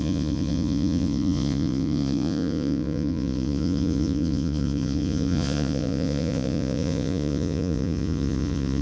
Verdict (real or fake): fake